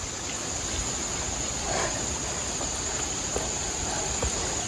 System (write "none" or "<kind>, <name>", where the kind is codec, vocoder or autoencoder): none